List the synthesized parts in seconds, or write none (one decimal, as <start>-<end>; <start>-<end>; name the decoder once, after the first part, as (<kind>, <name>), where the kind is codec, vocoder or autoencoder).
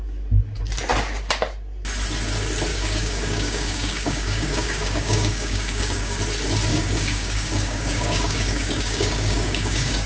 2.7-6.2 (codec, DAC); 6.7-10.1